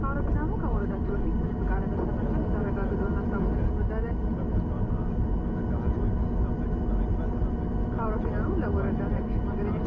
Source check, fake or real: real